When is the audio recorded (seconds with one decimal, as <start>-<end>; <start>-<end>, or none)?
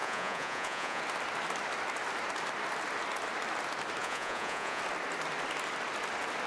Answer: 1.0-4.0; 4.8-6.5